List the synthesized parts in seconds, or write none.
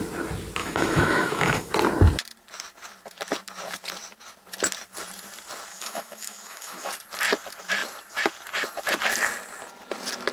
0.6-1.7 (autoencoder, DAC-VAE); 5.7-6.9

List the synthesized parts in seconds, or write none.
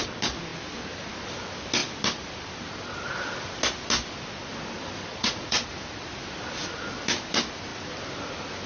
5.1-5.7 (vocoder, Vocos)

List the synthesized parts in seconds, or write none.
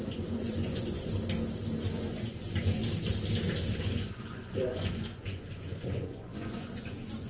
0.0-1.1 (vocoder, Vocos); 2.0-2.8; 3.8-7.3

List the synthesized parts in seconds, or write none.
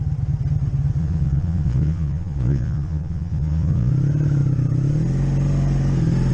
1.0-3.9 (vocoder, Vocos)